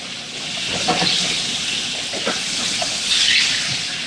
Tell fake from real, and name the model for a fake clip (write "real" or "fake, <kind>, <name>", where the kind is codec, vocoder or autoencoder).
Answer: real